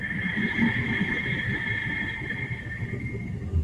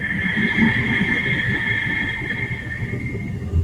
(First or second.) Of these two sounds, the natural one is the second